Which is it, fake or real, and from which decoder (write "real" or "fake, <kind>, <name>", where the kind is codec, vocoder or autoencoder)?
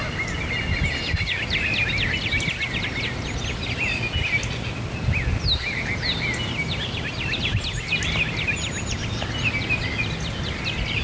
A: real